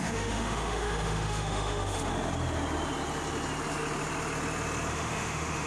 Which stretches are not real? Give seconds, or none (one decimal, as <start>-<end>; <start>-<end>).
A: 0.0-2.1; 4.9-5.7